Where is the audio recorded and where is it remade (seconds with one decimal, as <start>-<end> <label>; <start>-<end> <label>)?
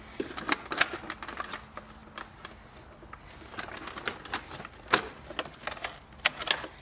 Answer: 0.0-6.8 recorded